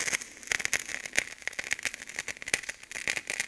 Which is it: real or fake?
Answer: real